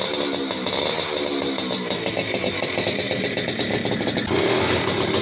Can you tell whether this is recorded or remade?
recorded